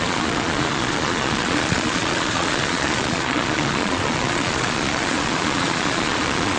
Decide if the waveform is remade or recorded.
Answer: remade